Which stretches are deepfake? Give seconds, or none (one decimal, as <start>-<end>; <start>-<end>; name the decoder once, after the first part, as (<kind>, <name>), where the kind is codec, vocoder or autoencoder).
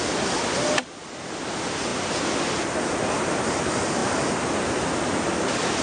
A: none